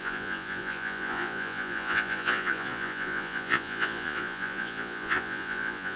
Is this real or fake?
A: fake